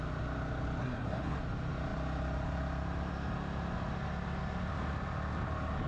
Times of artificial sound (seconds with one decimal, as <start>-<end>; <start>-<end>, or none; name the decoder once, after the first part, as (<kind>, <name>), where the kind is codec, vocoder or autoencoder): 0.8-1.4 (codec, SNAC)